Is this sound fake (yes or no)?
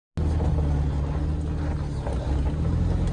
no